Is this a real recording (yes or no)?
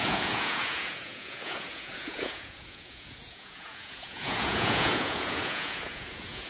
no